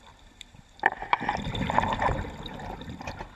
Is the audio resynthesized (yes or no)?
yes